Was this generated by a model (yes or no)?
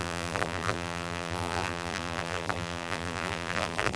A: yes